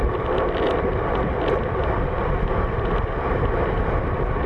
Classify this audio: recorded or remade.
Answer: recorded